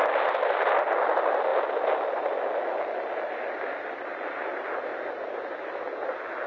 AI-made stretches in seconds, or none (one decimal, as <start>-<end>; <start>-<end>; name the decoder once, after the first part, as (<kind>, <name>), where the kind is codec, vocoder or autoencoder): 1.5-4.3 (vocoder, BigVGAN v2)